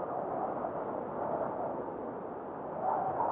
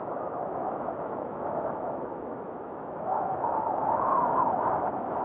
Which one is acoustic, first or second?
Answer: first